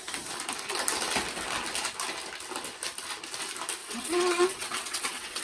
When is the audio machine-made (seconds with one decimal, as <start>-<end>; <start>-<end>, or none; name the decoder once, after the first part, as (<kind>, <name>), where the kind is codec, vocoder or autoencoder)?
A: 3.8-5.4 (vocoder, WaveNeXt)